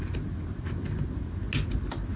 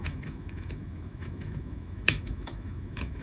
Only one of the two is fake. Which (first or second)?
second